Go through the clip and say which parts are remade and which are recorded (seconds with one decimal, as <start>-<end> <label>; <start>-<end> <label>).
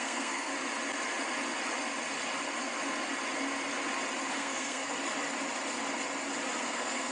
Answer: 0.0-0.5 remade; 0.5-4.3 recorded; 4.3-4.9 remade; 4.9-6.6 recorded; 6.6-7.1 remade